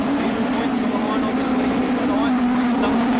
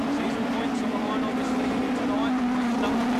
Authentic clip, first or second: second